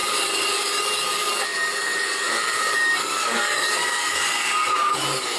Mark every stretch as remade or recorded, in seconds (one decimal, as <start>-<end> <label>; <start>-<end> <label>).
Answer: 0.0-5.4 remade